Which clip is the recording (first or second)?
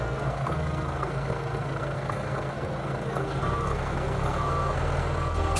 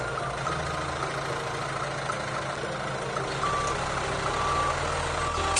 second